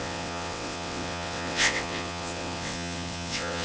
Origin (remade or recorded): remade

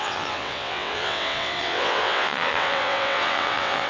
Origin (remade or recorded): remade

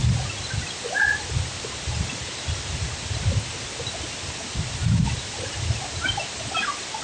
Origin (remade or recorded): recorded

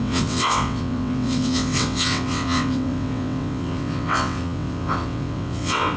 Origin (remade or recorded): remade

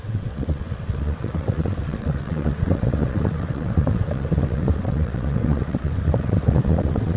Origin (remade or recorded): remade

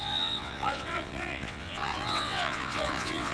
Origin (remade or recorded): remade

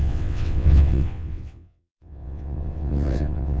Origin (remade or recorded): remade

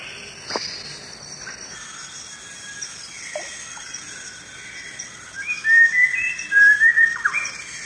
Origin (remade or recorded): recorded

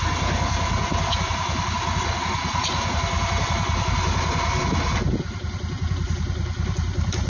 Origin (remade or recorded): recorded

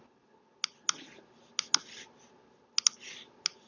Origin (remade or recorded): recorded